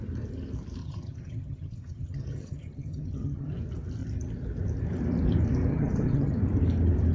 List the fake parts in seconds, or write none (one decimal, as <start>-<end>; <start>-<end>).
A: 0.8-3.5; 5.7-6.3